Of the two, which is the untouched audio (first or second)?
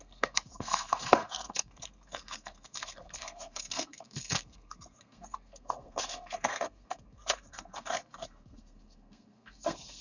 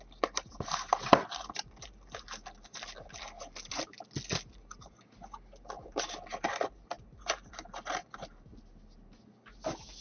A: second